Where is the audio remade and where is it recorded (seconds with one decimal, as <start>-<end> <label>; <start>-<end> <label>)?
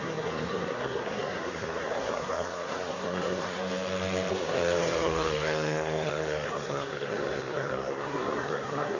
0.0-3.6 remade; 3.6-4.3 recorded; 4.3-9.0 remade